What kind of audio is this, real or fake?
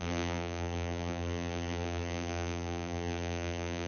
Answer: fake